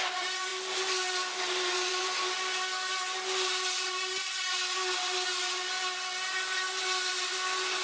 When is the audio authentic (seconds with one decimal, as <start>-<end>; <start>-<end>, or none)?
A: 0.0-7.8